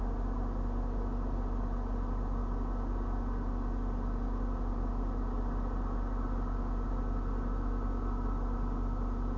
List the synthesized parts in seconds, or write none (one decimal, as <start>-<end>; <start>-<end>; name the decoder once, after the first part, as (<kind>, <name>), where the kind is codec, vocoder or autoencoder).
none